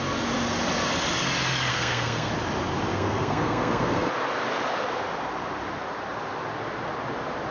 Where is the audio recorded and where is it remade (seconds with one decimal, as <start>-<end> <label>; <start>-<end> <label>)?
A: 0.0-1.7 recorded; 1.7-2.3 remade; 2.3-2.9 recorded; 2.9-4.1 remade; 4.1-7.5 recorded